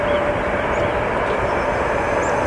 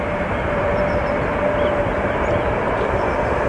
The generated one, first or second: second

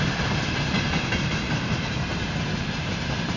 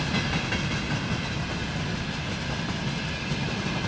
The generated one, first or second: first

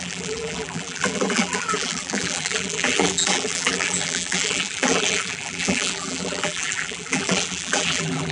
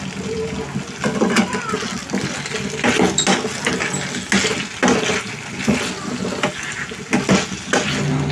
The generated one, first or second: first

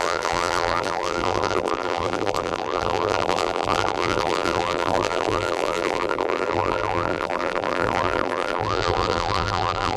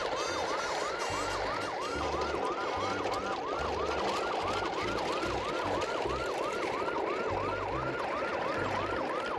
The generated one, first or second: first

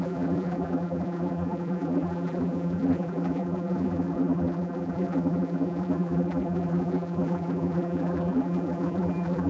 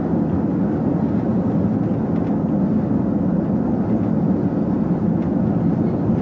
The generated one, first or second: first